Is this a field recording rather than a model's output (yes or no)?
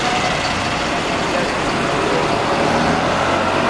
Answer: yes